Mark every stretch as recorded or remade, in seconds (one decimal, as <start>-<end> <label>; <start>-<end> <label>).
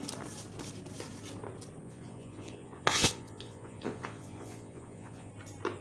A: 0.0-1.8 recorded; 1.8-5.3 remade; 5.3-5.8 recorded